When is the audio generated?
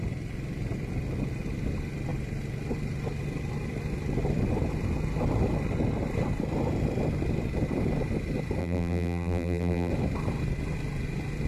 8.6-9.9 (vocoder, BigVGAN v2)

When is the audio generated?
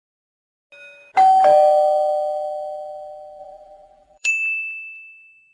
3.4-4.3 (vocoder, BigVGAN v2)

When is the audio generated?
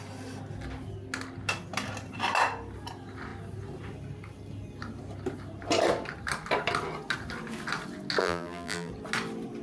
8.2-8.9 (vocoder, BigVGAN v2)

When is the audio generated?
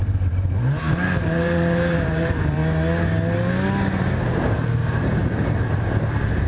0.0-2.6 (vocoder, BigVGAN v2); 4.4-6.5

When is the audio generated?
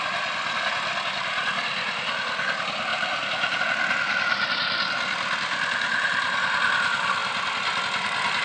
2.9-3.6 (vocoder, BigVGAN v2)